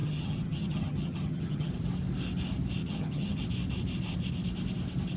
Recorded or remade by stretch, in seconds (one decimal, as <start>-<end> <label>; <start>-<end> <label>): 0.0-1.7 remade; 1.7-2.8 recorded; 2.8-3.4 remade; 3.4-5.2 recorded